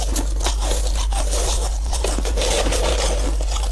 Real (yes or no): yes